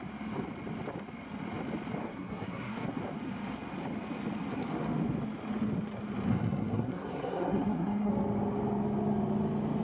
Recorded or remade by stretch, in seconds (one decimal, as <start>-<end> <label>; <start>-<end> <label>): 0.0-2.0 recorded; 2.0-3.0 remade; 3.0-6.3 recorded; 6.3-8.1 remade; 8.1-9.8 recorded